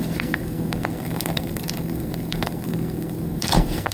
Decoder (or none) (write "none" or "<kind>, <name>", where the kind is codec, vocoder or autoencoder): codec, SNAC